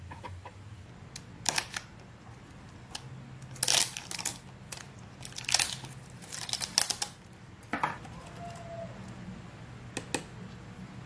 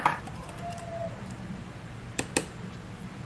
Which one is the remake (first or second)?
second